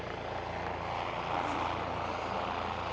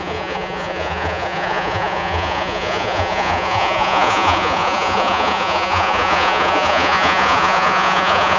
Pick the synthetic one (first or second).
second